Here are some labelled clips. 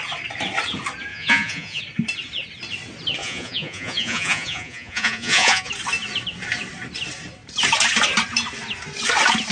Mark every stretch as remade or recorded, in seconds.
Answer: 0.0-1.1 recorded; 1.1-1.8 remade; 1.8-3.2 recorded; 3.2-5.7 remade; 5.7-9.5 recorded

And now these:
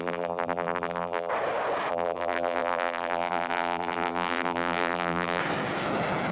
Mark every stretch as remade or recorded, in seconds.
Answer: 0.0-1.3 remade; 1.3-1.9 recorded; 1.9-5.4 remade; 5.4-6.3 recorded

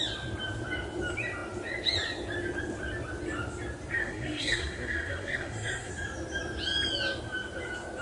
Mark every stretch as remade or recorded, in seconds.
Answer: 0.0-4.0 recorded; 4.0-5.9 remade; 5.9-8.0 recorded

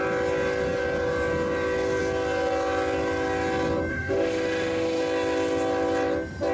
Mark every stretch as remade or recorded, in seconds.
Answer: 0.0-3.9 recorded; 3.9-5.0 remade; 5.0-6.5 recorded

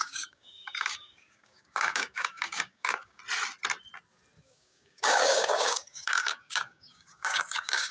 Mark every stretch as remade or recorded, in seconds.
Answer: 0.0-3.2 remade; 3.2-4.4 recorded; 4.4-7.9 remade

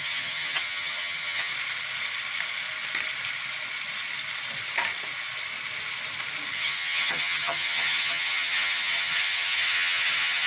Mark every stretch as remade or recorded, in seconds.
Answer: 0.0-1.5 remade; 1.5-6.6 recorded; 6.6-10.5 remade

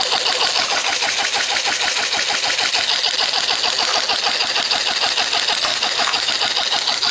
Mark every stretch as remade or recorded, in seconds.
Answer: 0.0-5.7 recorded; 5.7-6.3 remade; 6.3-7.1 recorded